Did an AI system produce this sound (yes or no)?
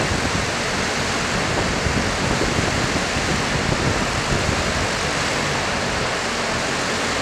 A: no